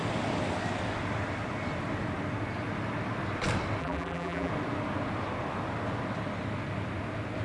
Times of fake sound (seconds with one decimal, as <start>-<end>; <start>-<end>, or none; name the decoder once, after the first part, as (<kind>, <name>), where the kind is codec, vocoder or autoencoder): 3.8-4.5 (vocoder, BigVGAN v2)